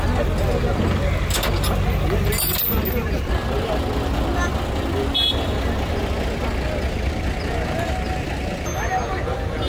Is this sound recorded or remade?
recorded